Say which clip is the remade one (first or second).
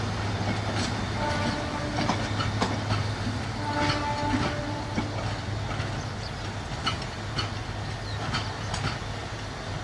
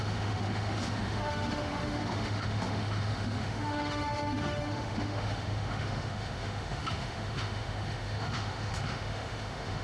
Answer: second